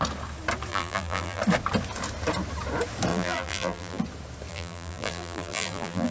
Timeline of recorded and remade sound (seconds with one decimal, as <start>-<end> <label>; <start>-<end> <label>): 0.0-0.7 recorded; 0.7-1.4 remade; 1.4-3.1 recorded; 3.1-4.0 remade; 4.0-4.5 recorded; 4.5-6.1 remade